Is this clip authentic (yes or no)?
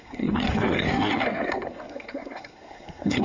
no